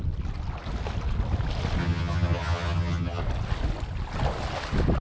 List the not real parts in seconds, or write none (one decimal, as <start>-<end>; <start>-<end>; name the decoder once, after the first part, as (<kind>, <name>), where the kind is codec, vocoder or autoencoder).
1.8-3.2 (vocoder, HiFi-GAN)